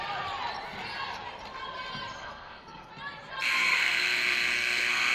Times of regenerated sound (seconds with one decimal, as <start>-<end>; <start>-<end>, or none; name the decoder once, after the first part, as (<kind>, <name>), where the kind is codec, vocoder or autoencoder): 2.2-2.9 (codec, SNAC); 3.7-5.1

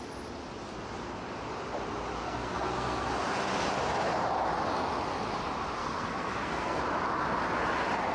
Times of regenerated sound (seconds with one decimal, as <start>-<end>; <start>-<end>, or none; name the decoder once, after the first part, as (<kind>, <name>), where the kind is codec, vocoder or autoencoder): 2.2-3.1 (codec, SNAC); 5.8-6.8

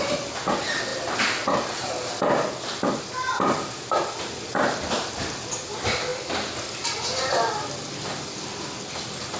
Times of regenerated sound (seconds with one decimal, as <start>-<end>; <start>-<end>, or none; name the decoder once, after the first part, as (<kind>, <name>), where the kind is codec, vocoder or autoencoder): none